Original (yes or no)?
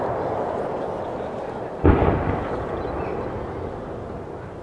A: yes